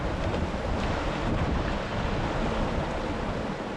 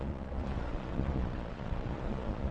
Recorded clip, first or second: first